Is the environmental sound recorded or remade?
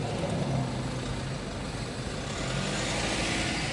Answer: recorded